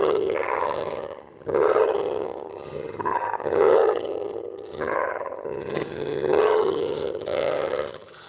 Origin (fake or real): fake